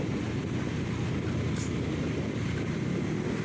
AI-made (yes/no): no